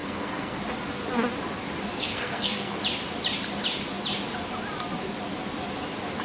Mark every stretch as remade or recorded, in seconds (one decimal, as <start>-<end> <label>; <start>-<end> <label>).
0.0-0.6 remade; 0.6-2.0 recorded; 2.0-2.8 remade; 2.8-6.2 recorded